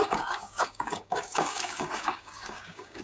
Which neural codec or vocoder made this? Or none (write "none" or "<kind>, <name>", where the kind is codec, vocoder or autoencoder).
codec, DAC